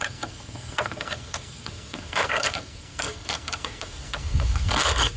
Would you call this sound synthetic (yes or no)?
yes